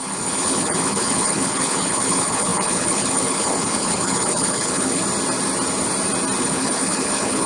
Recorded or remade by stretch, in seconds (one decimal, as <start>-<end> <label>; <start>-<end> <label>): 0.0-5.0 remade; 5.0-6.4 recorded; 6.4-7.5 remade